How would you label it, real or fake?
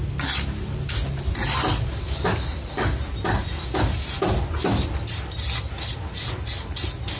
real